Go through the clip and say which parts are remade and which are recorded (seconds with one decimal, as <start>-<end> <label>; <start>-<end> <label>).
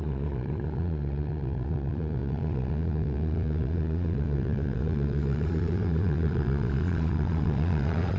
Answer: 0.0-8.2 remade